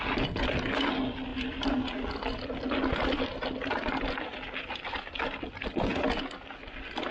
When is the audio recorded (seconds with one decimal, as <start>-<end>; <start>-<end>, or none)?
0.0-7.1